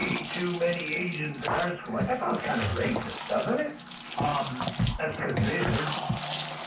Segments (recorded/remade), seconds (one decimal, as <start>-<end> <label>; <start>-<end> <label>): 0.0-6.7 recorded

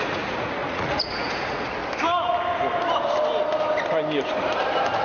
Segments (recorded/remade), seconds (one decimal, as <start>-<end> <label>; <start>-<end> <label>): 0.0-1.8 remade; 1.8-5.0 recorded